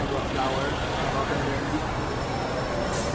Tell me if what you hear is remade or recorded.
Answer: recorded